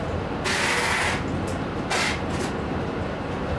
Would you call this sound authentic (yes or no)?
yes